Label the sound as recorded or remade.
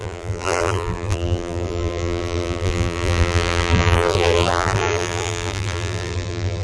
remade